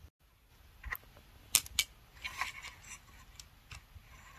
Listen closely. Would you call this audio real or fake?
real